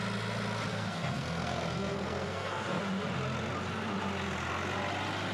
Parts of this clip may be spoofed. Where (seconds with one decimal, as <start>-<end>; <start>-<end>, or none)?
0.7-2.8